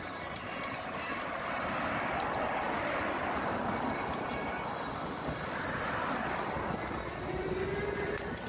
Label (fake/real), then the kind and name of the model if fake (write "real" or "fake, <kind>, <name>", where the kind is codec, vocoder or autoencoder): real